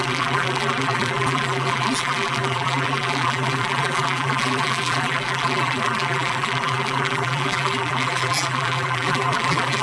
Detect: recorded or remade remade